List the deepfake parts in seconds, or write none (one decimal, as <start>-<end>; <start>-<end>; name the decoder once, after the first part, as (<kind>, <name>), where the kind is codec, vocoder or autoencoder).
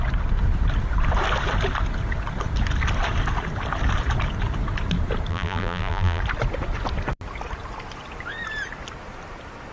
5.3-6.2 (vocoder, BigVGAN v2)